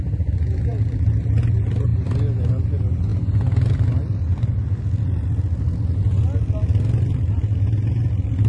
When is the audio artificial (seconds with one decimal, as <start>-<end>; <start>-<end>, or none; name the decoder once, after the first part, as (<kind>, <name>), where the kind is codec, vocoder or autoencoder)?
none